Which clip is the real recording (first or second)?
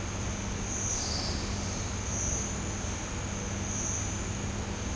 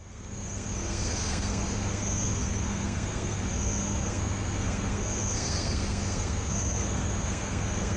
first